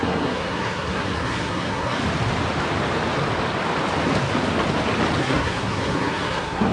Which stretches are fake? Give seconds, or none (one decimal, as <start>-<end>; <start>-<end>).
0.0-2.0; 5.2-6.7